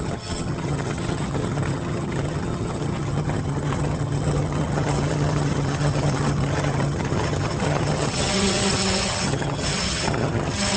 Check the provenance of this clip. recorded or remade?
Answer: remade